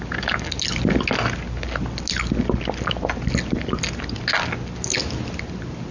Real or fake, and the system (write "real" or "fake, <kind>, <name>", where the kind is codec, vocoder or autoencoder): real